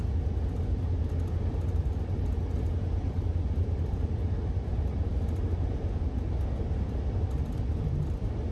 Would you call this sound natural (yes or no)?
yes